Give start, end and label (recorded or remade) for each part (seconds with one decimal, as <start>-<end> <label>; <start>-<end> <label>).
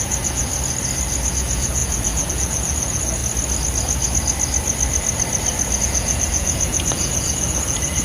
0.0-0.5 remade; 0.5-1.3 recorded; 1.3-3.2 remade; 3.2-5.8 recorded; 5.8-8.0 remade